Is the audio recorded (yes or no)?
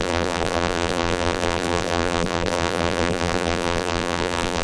no